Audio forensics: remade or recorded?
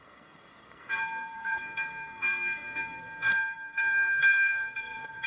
remade